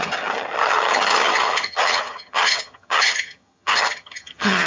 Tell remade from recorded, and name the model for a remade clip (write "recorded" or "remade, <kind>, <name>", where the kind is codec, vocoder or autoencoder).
remade, vocoder, HiFi-GAN